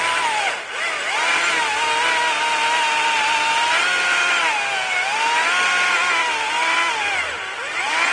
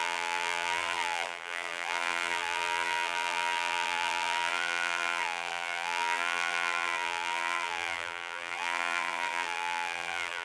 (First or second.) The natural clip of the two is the first